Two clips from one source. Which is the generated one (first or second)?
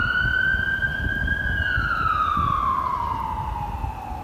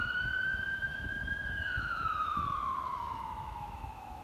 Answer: second